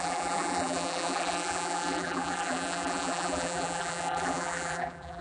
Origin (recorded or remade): remade